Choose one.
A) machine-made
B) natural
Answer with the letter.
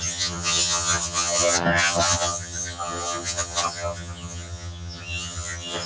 A